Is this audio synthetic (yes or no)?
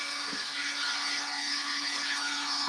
yes